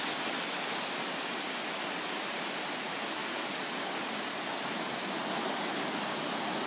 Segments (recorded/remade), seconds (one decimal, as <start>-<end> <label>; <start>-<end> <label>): 0.0-6.7 recorded